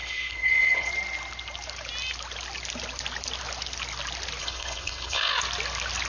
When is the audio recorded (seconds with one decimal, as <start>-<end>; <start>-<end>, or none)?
0.9-4.4; 5.3-6.1